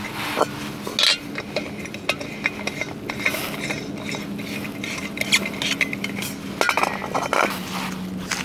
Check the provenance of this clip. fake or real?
real